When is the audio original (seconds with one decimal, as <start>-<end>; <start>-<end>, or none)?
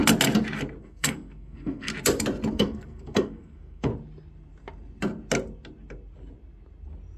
0.0-0.8; 1.9-2.5; 3.9-7.2